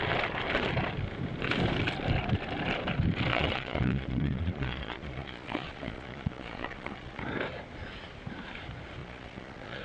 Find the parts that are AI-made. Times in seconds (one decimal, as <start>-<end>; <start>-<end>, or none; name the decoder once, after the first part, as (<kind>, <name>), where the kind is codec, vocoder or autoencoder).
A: 3.3-7.2 (vocoder, Vocos); 9.0-9.8